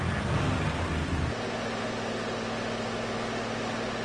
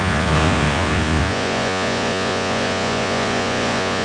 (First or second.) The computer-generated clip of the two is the second